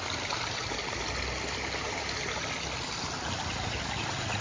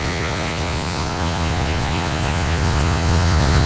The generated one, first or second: second